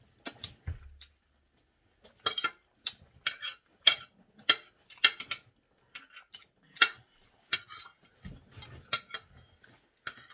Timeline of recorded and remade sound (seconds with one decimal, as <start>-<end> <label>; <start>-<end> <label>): 0.0-10.3 recorded